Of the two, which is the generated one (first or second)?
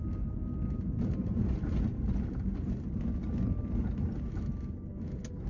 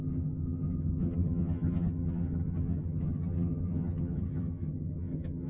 second